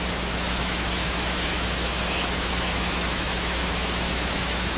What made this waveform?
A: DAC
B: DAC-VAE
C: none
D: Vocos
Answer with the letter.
B